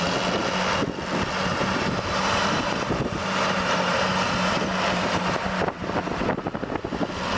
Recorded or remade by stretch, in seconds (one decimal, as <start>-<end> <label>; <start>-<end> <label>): 0.0-1.5 recorded; 1.5-5.9 remade; 5.9-7.4 recorded